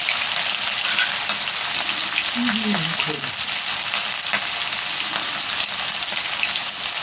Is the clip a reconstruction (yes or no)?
no